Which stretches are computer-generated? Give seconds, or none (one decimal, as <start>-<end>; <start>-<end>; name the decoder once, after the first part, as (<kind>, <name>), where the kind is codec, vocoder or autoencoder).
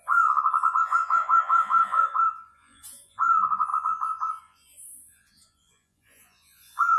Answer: 0.0-7.0 (vocoder, Vocos)